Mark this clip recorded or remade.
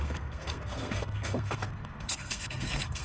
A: remade